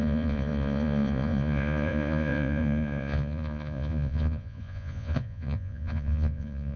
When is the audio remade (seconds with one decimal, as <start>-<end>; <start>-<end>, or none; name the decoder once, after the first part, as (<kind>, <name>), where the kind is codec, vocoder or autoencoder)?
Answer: 0.0-6.8 (vocoder, Vocos)

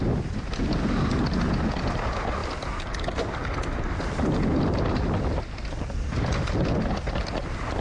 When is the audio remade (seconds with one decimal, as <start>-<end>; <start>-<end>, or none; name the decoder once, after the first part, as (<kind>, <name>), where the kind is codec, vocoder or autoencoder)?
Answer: none

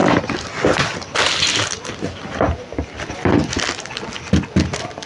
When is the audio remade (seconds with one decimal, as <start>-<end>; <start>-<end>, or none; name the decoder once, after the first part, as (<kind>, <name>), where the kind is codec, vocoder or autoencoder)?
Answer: none